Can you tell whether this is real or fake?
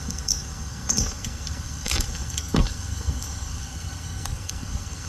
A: fake